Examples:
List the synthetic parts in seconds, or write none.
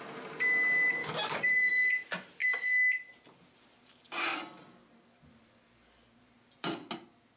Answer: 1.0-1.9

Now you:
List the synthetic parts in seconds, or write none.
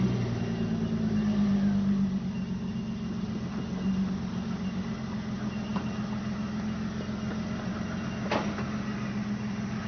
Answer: none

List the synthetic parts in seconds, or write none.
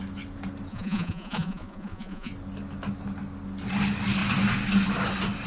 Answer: 0.7-2.3